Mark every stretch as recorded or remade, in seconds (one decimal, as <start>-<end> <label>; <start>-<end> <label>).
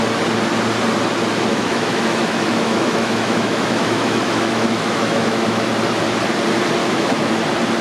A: 0.0-1.5 recorded; 1.5-5.7 remade; 5.7-6.8 recorded; 6.8-7.3 remade; 7.3-7.8 recorded